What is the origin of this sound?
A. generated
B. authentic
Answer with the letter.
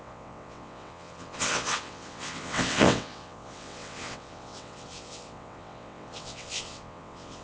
A